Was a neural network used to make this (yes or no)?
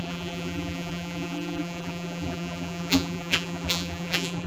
yes